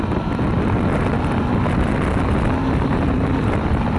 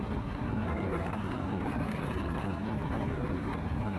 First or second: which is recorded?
first